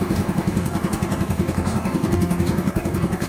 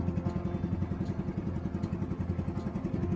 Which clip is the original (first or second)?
second